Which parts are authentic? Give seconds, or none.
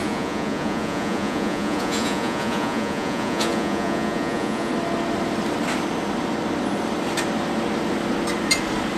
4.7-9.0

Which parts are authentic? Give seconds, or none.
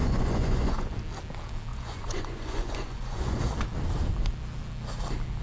0.9-1.7; 3.4-5.4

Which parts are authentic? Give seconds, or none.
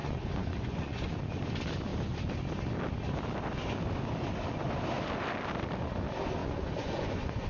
1.2-6.4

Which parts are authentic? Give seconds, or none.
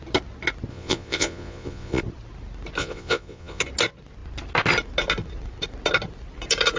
0.0-0.7; 2.0-2.8; 3.6-6.8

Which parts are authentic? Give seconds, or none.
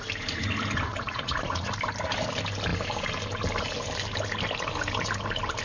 0.0-0.9; 1.7-5.6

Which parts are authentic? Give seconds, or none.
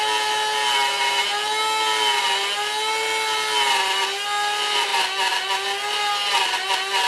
0.0-7.1